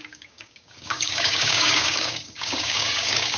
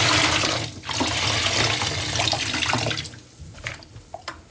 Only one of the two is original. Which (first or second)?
second